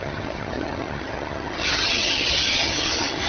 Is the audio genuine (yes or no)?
no